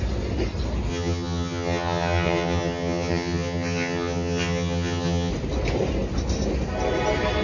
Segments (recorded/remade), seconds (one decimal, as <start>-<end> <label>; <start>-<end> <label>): 0.0-0.9 recorded; 0.9-5.3 remade; 5.3-7.4 recorded